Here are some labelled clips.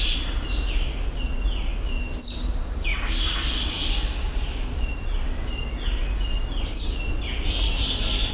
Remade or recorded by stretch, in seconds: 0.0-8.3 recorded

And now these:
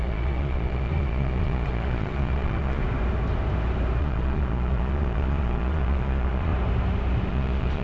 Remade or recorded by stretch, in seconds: 0.0-2.8 remade; 2.8-4.0 recorded; 4.0-6.5 remade; 6.5-7.3 recorded; 7.3-7.8 remade

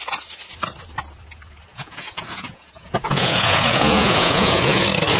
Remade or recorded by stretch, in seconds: 0.0-1.7 recorded; 1.7-4.8 remade; 4.8-5.2 recorded

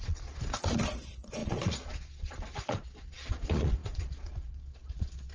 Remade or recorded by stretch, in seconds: 0.0-5.3 remade

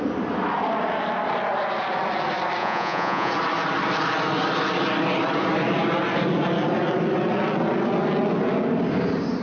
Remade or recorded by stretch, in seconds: 0.0-2.6 recorded; 2.6-3.3 remade; 3.3-9.4 recorded